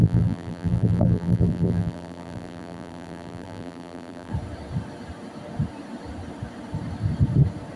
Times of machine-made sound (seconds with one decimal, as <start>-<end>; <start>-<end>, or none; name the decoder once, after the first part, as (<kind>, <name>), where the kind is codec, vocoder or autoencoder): 0.0-4.3 (vocoder, BigVGAN v2)